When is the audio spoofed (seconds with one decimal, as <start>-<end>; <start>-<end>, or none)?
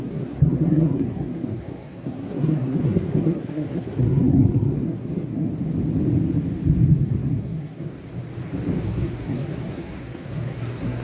0.0-5.5; 7.0-7.9; 8.8-11.0